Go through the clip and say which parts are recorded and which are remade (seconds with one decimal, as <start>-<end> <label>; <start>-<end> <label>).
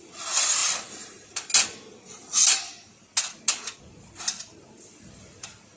0.0-5.8 recorded